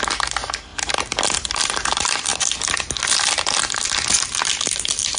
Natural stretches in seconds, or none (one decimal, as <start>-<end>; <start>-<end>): 0.0-5.2